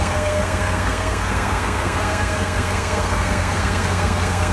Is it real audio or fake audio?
fake